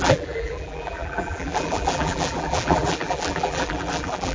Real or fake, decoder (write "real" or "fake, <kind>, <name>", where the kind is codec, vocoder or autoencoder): fake, vocoder, BigVGAN v2